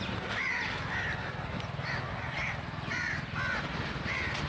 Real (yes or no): yes